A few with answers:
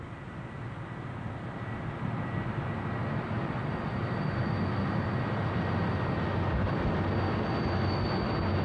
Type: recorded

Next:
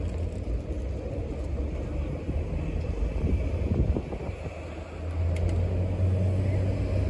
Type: recorded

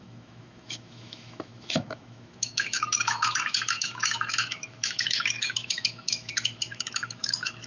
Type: remade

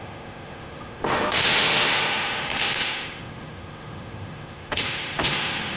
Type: remade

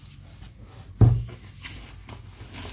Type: recorded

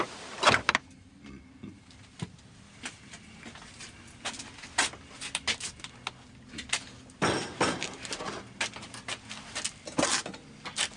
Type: recorded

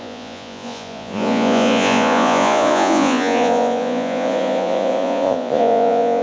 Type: remade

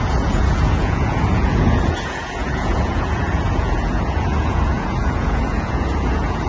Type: remade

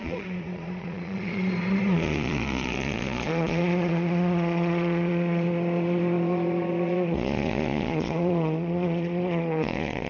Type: remade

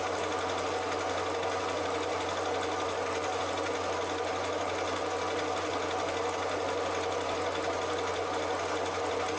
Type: recorded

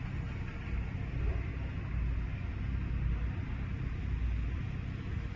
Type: recorded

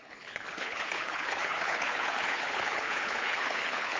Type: remade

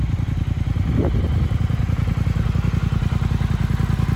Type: recorded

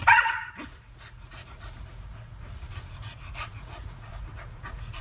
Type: remade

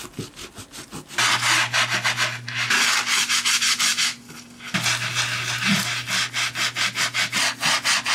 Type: recorded